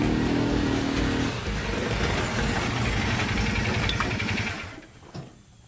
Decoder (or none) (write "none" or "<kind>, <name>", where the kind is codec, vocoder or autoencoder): none